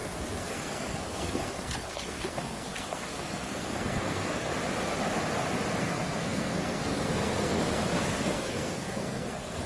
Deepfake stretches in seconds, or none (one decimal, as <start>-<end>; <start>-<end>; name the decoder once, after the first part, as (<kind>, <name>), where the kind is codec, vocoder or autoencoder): 0.0-4.5 (codec, SNAC); 5.8-9.7